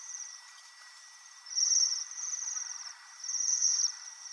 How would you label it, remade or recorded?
remade